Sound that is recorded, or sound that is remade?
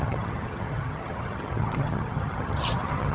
remade